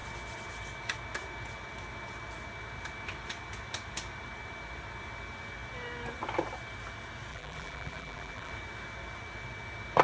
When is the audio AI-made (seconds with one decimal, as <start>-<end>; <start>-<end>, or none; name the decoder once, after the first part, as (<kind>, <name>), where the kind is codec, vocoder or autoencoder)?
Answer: 7.3-8.5 (vocoder, BigVGAN v2)